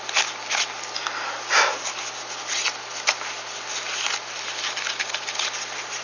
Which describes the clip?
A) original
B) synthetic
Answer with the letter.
A